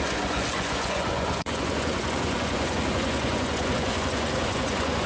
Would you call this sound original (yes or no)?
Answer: no